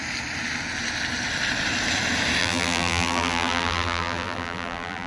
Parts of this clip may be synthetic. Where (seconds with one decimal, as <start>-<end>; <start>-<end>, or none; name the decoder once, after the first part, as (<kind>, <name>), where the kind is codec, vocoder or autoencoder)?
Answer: 2.4-5.1 (vocoder, BigVGAN v2)